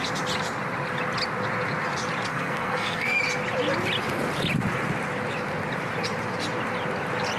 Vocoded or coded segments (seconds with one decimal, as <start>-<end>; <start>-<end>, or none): 2.3-3.2